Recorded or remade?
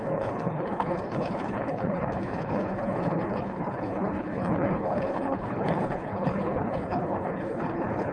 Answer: remade